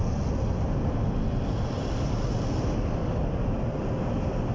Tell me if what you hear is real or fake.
real